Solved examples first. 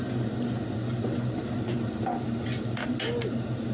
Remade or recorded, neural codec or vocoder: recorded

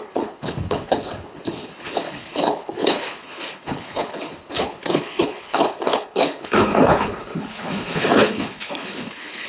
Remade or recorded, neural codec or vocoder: remade, codec, HILCodec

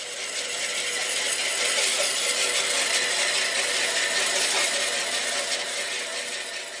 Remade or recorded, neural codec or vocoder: recorded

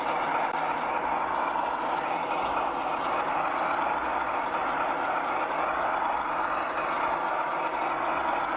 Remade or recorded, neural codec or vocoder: recorded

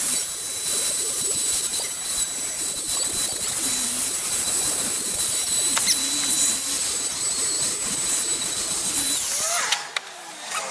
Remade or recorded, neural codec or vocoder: recorded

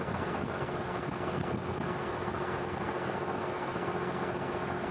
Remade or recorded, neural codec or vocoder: remade, codec, SNAC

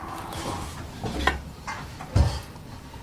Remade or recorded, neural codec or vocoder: recorded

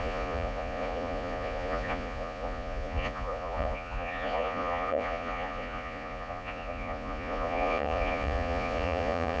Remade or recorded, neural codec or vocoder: remade, vocoder, Vocos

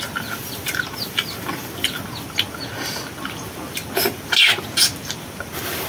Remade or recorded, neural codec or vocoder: recorded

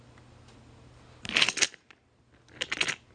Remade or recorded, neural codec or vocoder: recorded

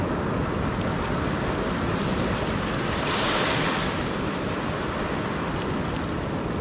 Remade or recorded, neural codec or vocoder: recorded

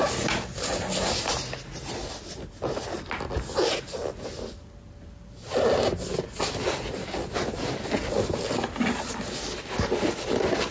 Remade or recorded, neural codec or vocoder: recorded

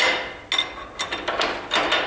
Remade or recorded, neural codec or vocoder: recorded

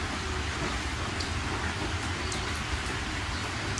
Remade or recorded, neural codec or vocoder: recorded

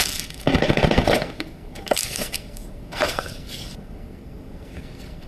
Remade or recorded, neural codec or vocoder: remade, codec, SNAC